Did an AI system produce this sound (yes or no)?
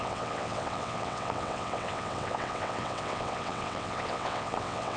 yes